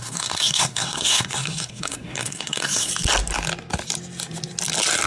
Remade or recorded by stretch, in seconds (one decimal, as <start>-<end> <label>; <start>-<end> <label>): 0.0-2.9 remade; 2.9-5.1 recorded